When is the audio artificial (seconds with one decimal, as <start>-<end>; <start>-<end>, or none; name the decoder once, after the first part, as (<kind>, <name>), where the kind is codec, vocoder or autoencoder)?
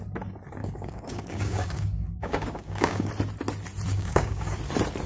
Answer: 0.6-3.1 (codec, DAC); 3.9-4.6